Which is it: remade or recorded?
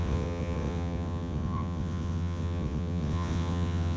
remade